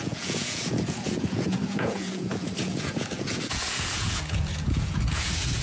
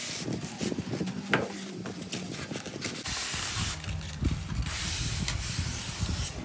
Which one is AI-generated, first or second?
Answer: first